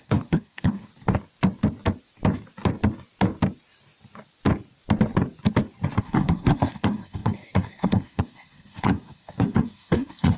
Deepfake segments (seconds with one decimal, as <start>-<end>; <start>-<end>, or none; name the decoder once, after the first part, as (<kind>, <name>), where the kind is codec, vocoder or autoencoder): 0.0-0.9 (codec, SNAC); 6.0-10.4